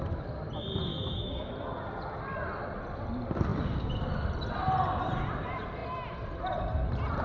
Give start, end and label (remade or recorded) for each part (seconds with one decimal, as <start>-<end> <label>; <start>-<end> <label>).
0.0-0.9 recorded; 0.9-1.5 remade; 1.5-7.2 recorded